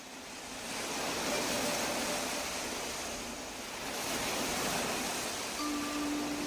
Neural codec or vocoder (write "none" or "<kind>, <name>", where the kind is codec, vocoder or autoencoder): none